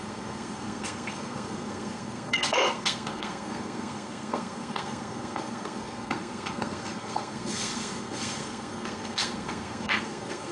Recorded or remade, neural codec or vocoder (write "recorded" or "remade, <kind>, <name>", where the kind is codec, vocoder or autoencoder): remade, codec, SNAC